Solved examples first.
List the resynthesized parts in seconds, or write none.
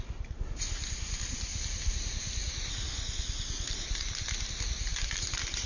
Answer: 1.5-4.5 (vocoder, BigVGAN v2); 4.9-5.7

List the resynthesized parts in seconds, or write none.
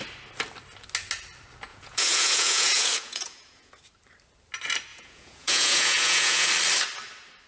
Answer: 1.7-3.7 (vocoder, Vocos); 4.9-6.5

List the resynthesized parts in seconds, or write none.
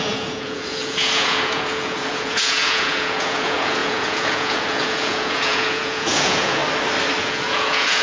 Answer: 0.0-6.6 (vocoder, Vocos); 7.2-8.0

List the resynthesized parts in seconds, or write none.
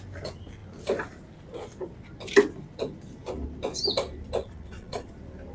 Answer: 4.4-5.1 (vocoder, Vocos)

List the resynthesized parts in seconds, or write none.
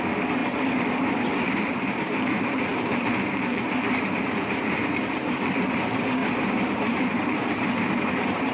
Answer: 0.0-0.4 (vocoder, BigVGAN v2); 1.3-6.2; 6.7-7.4; 7.9-8.5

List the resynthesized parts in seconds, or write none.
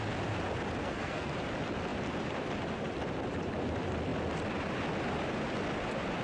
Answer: 0.8-1.3 (codec, SNAC)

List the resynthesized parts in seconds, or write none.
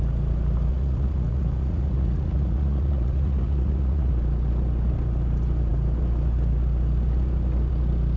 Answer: 0.7-4.1 (vocoder, Vocos)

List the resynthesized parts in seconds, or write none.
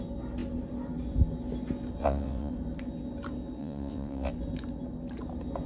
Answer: 2.0-2.5 (vocoder, WaveNeXt); 3.6-4.3